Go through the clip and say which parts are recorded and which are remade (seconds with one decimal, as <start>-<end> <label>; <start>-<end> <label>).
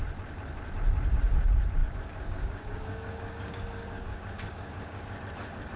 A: 0.0-1.8 recorded; 1.8-5.2 remade; 5.2-5.8 recorded